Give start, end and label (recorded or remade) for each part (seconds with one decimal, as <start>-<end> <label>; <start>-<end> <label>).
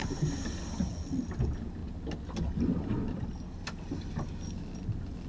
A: 0.0-5.3 recorded